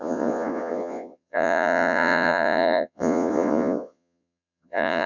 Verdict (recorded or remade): remade